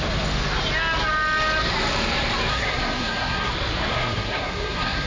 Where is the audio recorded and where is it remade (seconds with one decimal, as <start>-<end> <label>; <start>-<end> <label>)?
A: 0.0-2.5 recorded; 2.5-3.5 remade; 3.5-3.9 recorded; 3.9-5.1 remade